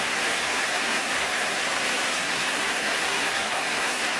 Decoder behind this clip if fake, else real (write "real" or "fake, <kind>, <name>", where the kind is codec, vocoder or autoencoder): fake, codec, SNAC